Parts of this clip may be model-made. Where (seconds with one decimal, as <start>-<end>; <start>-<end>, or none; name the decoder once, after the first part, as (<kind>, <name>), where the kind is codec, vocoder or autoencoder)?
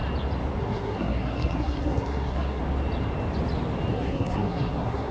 0.6-2.6 (codec, SNAC); 3.9-5.1